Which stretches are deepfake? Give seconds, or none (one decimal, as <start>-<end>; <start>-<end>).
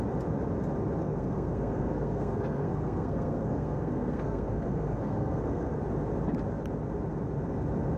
1.0-5.8